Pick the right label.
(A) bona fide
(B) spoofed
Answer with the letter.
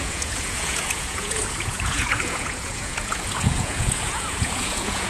B